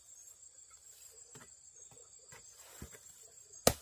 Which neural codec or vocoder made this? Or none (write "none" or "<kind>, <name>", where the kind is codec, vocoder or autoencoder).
none